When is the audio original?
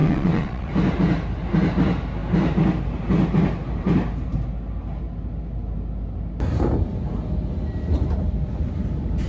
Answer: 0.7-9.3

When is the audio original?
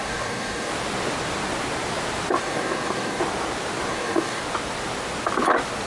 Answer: 0.7-2.4; 3.2-3.9; 4.4-5.9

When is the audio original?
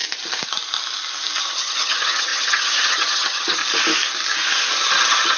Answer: 0.0-1.4; 3.6-4.9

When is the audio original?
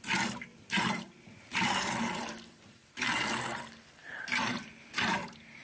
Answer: 0.0-0.5; 3.2-4.0; 4.7-5.6